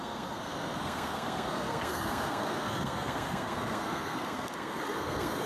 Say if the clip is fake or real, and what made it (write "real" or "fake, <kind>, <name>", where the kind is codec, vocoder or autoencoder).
fake, codec, SNAC